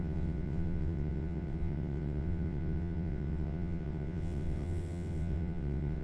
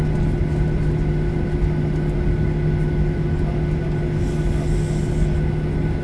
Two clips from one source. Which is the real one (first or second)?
second